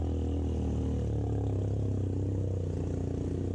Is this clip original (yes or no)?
yes